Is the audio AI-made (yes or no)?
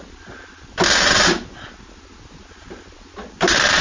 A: no